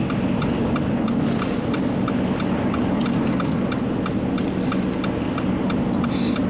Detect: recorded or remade recorded